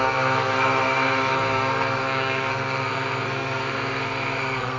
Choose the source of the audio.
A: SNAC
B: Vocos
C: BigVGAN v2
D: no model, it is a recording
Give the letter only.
A